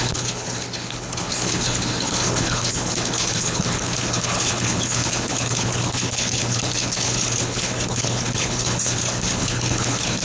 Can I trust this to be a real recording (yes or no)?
no